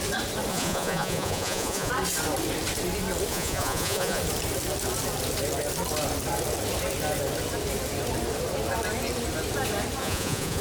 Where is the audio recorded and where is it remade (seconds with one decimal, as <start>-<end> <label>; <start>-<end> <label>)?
0.0-0.5 recorded; 0.5-1.9 remade; 1.9-3.3 recorded; 3.3-4.2 remade; 4.2-10.0 recorded; 10.0-10.6 remade